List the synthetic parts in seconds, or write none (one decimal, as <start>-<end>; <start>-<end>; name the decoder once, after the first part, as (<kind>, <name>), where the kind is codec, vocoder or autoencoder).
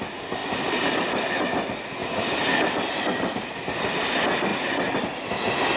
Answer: 0.4-1.4 (vocoder, BigVGAN v2); 2.0-2.7